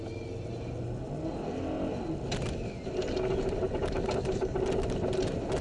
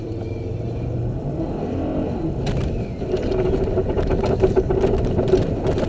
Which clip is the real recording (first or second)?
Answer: first